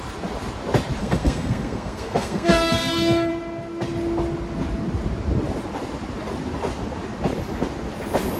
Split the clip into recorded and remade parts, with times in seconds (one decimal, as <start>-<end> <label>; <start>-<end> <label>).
0.0-1.0 recorded; 1.0-3.3 remade; 3.3-8.4 recorded